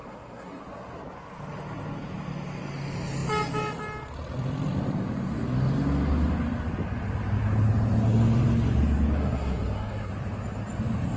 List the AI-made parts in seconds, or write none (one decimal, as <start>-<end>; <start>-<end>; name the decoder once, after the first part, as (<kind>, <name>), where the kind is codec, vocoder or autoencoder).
0.0-0.6 (codec, SNAC); 9.2-10.1